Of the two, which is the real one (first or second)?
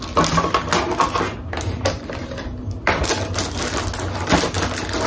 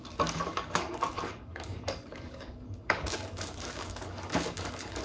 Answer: first